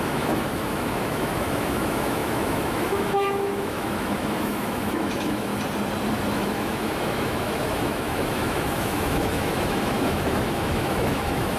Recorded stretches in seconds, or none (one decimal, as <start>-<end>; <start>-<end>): 5.5-6.3